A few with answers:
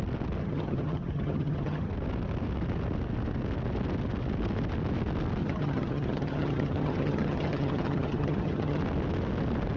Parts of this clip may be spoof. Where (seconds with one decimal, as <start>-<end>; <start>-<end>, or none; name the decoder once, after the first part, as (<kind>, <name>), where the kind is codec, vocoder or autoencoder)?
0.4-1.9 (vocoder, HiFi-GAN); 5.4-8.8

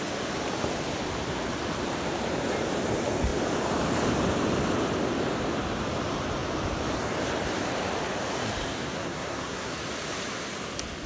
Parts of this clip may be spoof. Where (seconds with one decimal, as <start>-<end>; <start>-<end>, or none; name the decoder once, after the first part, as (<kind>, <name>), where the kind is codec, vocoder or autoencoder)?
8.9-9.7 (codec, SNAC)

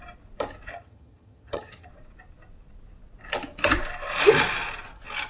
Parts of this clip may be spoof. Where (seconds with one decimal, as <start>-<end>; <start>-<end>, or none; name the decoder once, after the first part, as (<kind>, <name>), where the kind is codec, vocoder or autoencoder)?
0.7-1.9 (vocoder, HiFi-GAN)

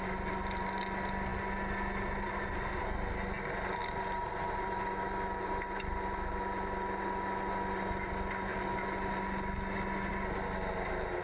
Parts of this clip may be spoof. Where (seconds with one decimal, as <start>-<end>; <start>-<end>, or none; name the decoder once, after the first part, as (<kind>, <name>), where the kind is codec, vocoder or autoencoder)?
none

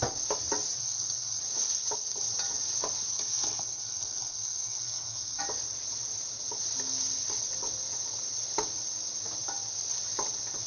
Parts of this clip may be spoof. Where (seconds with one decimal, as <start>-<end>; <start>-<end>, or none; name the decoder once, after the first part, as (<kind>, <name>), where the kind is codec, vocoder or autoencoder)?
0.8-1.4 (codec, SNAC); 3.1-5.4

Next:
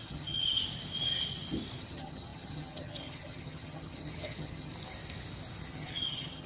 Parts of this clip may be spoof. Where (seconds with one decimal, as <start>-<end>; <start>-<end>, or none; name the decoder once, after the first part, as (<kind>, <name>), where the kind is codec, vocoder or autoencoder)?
0.0-0.6 (vocoder, HiFi-GAN); 1.8-4.7; 5.6-6.5